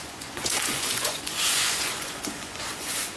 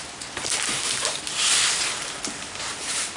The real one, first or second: second